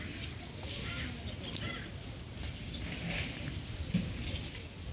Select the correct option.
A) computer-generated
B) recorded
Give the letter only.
B